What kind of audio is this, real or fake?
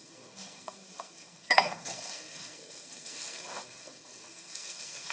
fake